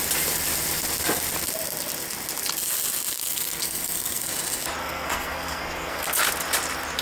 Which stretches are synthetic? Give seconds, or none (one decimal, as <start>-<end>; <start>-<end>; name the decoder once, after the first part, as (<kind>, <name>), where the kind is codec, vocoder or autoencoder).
3.2-4.3 (codec, SNAC); 4.8-6.2